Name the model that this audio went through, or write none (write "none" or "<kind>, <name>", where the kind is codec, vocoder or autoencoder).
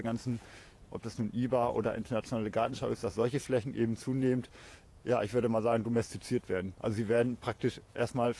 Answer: vocoder, Vocos